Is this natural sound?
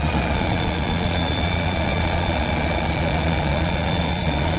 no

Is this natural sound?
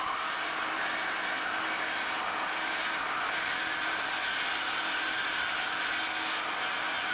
yes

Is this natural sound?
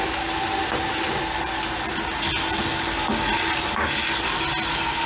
yes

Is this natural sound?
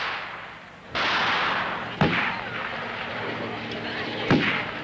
yes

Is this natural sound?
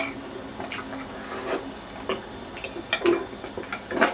yes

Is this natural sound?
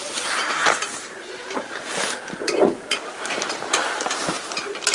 no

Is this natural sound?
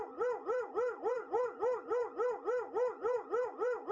no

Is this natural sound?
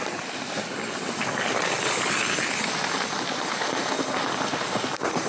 yes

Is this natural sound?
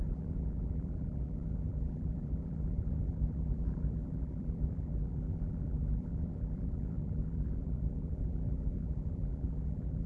no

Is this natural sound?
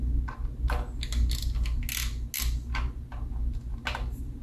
yes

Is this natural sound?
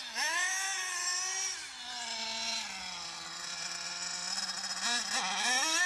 yes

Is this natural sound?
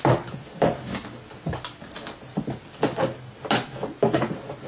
yes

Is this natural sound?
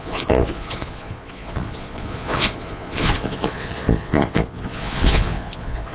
no